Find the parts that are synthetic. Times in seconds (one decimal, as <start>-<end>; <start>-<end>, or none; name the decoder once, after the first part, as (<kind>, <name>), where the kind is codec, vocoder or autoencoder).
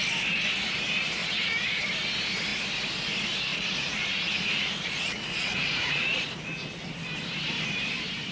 1.2-1.8 (vocoder, Vocos); 3.5-6.2